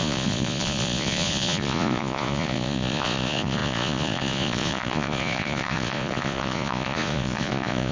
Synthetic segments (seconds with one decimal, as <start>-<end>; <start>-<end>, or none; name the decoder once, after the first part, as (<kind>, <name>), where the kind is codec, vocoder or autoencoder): 0.0-7.9 (vocoder, Vocos)